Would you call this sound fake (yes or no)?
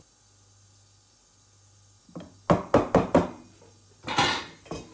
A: no